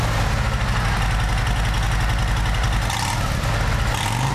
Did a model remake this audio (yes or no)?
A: no